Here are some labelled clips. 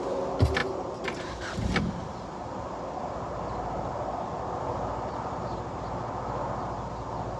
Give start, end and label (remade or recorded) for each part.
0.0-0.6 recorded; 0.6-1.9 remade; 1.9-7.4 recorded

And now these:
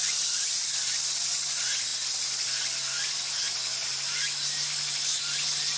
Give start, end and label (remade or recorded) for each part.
0.0-5.8 recorded

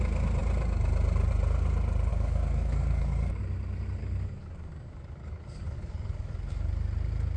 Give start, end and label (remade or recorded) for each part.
0.0-2.1 recorded; 2.1-3.4 remade; 3.4-4.0 recorded; 4.0-6.7 remade; 6.7-7.4 recorded

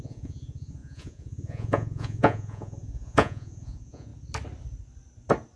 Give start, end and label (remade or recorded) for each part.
0.0-4.1 remade; 4.1-5.6 recorded

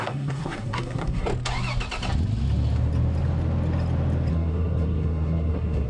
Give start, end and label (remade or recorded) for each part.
0.0-1.3 remade; 1.3-4.3 recorded; 4.3-5.9 remade

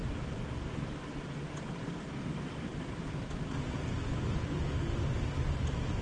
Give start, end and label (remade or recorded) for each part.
0.0-4.6 remade; 4.6-5.6 recorded; 5.6-6.0 remade

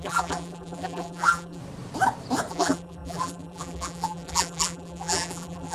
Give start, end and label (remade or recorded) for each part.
0.0-1.6 remade; 1.6-2.5 recorded; 2.5-5.7 remade